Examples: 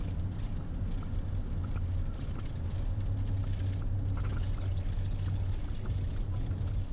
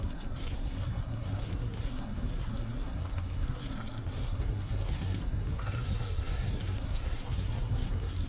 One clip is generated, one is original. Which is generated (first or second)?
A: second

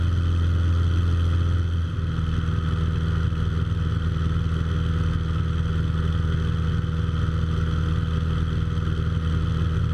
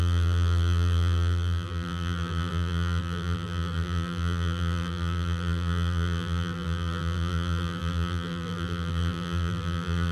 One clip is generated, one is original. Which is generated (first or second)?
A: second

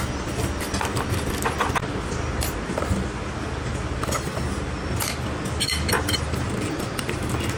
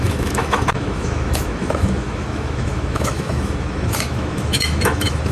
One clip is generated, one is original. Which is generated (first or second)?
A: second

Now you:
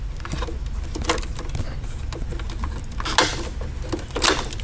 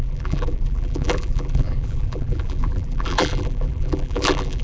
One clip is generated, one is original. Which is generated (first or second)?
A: second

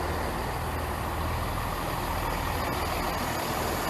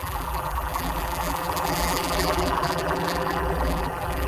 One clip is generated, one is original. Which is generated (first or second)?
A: second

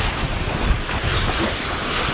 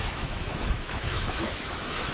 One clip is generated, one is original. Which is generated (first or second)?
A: second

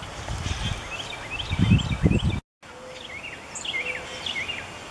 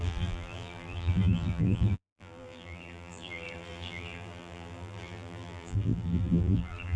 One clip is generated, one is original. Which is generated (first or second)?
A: second